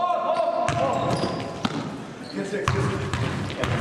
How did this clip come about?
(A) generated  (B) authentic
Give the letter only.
B